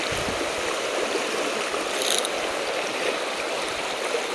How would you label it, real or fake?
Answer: real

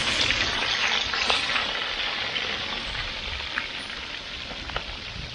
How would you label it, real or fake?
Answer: real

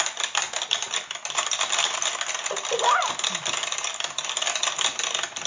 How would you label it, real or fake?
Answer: real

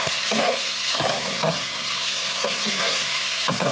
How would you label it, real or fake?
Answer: fake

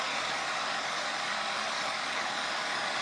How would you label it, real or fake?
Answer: fake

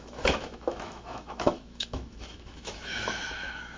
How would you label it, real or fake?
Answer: fake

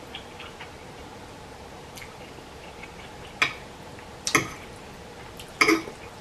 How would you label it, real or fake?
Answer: real